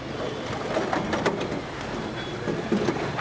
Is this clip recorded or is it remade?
recorded